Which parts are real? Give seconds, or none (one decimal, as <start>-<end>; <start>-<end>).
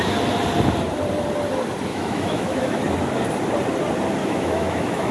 0.0-1.9; 2.8-4.2